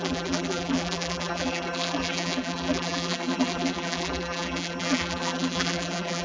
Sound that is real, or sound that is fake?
fake